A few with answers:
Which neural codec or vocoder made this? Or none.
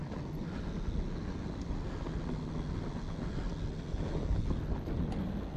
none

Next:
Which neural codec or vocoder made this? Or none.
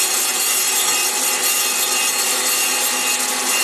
none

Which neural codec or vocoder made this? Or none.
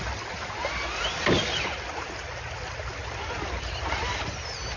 none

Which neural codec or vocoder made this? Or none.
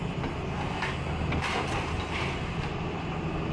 none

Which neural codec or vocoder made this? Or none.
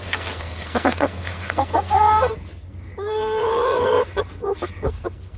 codec, SNAC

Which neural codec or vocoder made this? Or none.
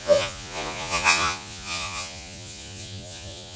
vocoder, Vocos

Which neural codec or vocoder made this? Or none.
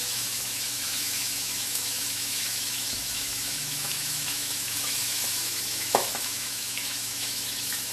autoencoder, DAC-VAE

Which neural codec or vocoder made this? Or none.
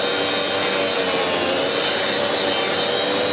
none